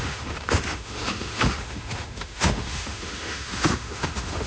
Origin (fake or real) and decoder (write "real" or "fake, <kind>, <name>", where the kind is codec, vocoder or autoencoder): fake, autoencoder, DAC-VAE